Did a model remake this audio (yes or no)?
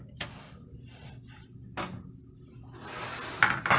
no